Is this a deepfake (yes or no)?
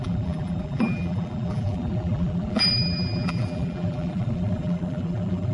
yes